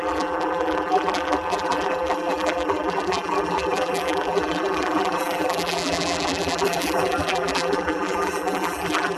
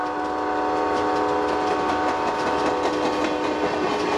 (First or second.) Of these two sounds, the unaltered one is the second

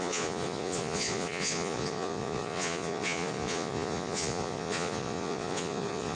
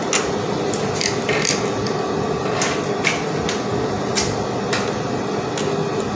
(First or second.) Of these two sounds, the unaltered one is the second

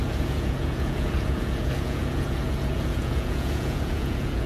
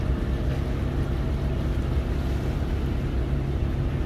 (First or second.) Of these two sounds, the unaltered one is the second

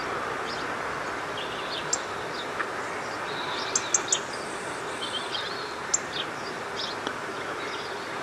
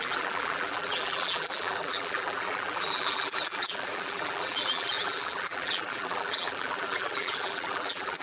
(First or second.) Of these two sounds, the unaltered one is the first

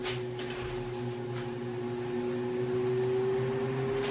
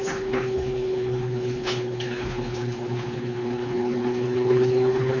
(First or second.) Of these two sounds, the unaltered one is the first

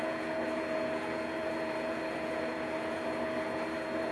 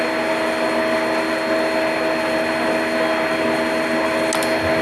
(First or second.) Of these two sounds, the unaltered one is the second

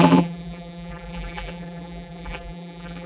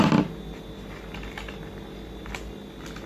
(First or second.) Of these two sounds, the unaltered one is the second